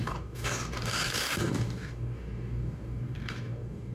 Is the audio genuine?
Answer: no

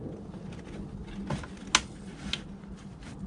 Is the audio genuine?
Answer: yes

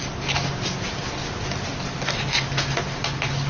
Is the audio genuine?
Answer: yes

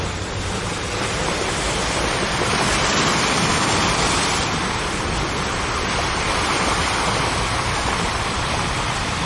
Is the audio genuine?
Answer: yes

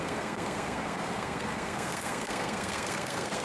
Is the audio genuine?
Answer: no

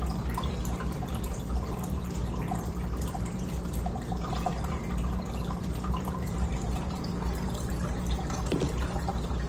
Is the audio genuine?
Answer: no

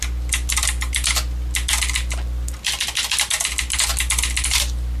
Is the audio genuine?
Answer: yes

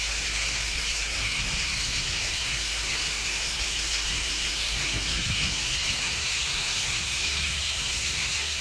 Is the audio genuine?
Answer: no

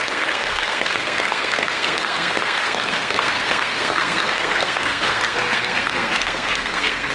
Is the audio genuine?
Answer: no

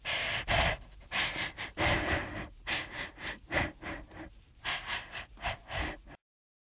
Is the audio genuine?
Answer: no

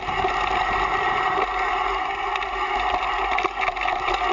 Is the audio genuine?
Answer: yes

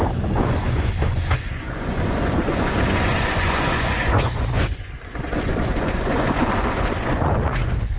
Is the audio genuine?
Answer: no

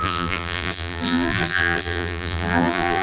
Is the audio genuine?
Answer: no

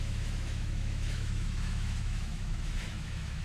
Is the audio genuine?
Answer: no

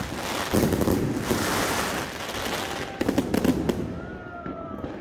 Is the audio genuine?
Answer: yes